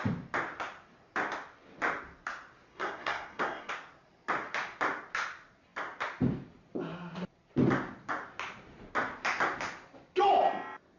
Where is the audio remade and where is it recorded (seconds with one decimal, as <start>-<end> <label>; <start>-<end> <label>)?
0.0-2.7 recorded; 2.7-3.7 remade; 3.7-11.0 recorded